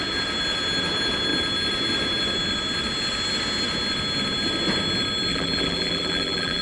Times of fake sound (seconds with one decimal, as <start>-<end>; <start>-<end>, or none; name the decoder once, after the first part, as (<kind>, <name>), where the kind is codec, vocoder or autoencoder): 5.3-6.6 (vocoder, BigVGAN v2)